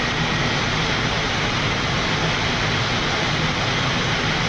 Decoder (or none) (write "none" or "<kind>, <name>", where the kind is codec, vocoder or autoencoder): none